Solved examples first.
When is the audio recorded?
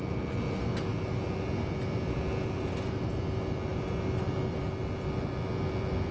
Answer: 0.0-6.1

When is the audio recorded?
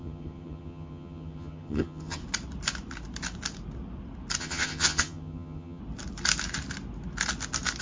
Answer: 2.2-4.4; 5.8-7.8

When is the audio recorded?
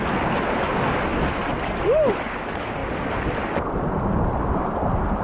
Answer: 0.0-5.2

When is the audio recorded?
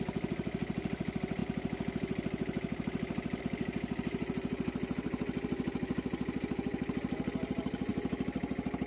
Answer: 0.0-8.9